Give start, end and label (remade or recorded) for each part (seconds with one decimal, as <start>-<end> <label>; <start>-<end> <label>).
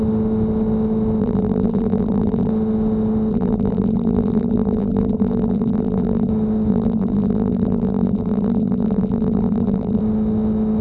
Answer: 0.0-1.2 recorded; 1.2-2.5 remade; 2.5-3.3 recorded; 3.3-6.3 remade; 6.3-6.7 recorded; 6.7-10.0 remade; 10.0-10.8 recorded